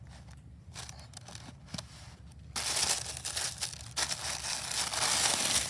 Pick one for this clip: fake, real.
real